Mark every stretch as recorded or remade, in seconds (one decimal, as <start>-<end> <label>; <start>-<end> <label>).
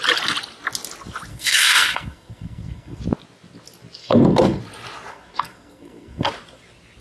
0.0-1.3 recorded; 1.3-3.0 remade; 3.0-4.0 recorded; 4.0-4.6 remade; 4.6-5.1 recorded; 5.1-6.3 remade; 6.3-7.0 recorded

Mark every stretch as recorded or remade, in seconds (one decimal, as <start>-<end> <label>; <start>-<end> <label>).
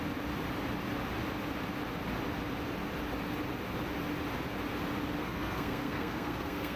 0.0-5.2 recorded; 5.2-6.8 remade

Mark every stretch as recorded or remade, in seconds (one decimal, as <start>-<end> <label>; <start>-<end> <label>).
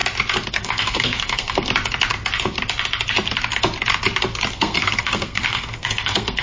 0.0-0.5 recorded; 0.5-1.7 remade; 1.7-4.5 recorded; 4.5-6.4 remade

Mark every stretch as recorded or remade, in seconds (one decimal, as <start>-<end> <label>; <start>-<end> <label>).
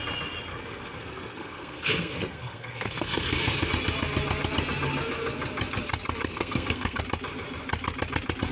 0.0-0.5 recorded; 0.5-3.7 remade; 3.7-6.3 recorded; 6.3-7.0 remade; 7.0-8.5 recorded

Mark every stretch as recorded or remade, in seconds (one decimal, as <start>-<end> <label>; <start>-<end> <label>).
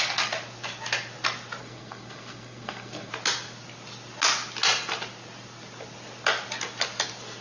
0.0-1.6 recorded; 1.6-3.1 remade; 3.1-7.4 recorded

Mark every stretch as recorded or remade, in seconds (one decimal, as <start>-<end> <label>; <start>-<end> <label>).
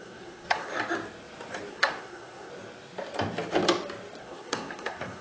0.0-0.7 remade; 0.7-1.7 recorded; 1.7-2.5 remade; 2.5-4.2 recorded; 4.2-5.2 remade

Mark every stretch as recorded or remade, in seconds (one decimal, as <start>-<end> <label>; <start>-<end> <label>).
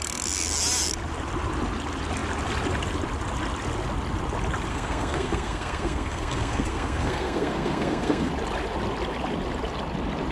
0.0-4.7 recorded; 4.7-8.3 remade; 8.3-10.3 recorded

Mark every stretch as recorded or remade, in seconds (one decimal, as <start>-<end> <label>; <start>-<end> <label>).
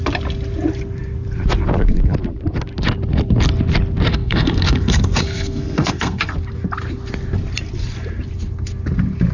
0.0-4.1 recorded; 4.1-6.3 remade; 6.3-9.3 recorded